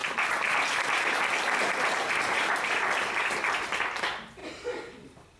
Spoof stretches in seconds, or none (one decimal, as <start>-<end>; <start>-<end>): 4.4-5.4